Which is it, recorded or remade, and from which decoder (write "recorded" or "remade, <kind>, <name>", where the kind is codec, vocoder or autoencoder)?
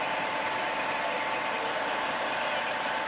recorded